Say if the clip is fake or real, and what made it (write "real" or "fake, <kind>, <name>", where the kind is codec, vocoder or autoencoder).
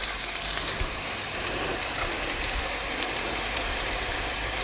fake, vocoder, BigVGAN v2